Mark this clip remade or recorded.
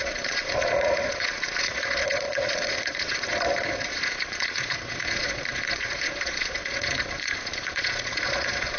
remade